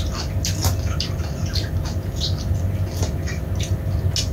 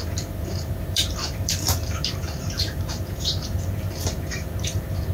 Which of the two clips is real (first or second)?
first